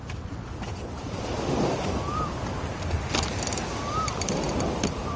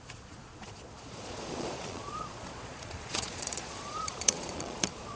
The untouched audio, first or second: first